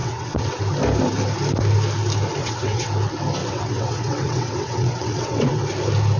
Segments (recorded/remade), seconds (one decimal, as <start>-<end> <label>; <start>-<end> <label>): 0.0-0.6 remade; 0.6-2.4 recorded; 2.4-2.9 remade; 2.9-3.4 recorded; 3.4-5.6 remade; 5.6-6.2 recorded